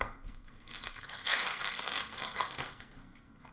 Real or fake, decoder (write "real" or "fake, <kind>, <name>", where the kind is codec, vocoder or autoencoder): fake, codec, SNAC